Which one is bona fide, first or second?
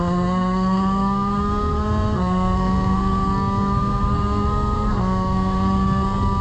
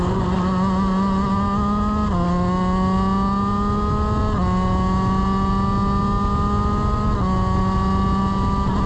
second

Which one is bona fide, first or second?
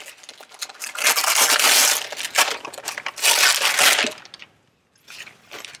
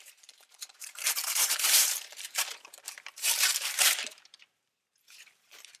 first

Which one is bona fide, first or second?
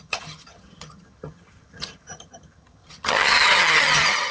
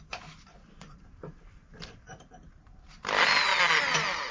second